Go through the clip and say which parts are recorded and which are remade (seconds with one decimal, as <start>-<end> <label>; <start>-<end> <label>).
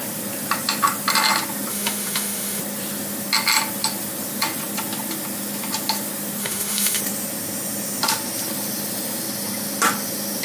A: 0.0-1.7 recorded; 1.7-2.6 remade; 2.6-6.4 recorded; 6.4-7.0 remade; 7.0-10.4 recorded